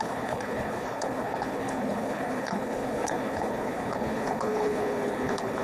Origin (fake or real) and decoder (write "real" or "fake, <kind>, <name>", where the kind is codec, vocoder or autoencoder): fake, codec, HILCodec